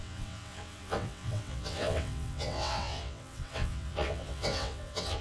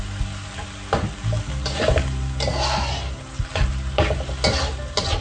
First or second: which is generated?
first